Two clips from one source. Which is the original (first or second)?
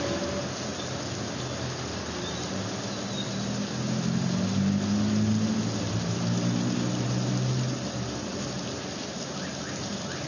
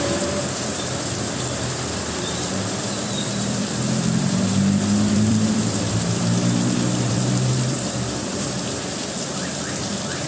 first